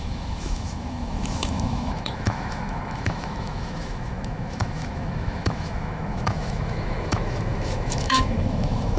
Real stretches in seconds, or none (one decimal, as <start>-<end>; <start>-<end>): none